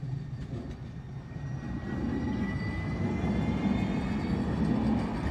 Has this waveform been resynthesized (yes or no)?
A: no